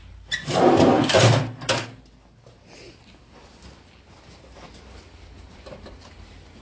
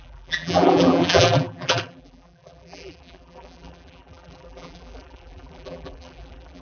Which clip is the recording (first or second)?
first